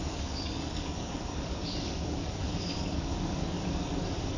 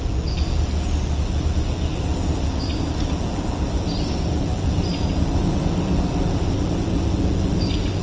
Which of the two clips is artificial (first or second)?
first